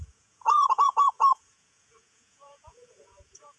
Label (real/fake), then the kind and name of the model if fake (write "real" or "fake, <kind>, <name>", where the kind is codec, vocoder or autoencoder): fake, vocoder, Vocos